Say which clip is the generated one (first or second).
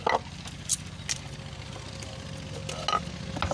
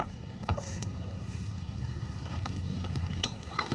second